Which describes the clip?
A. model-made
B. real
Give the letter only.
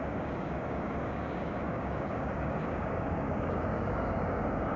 A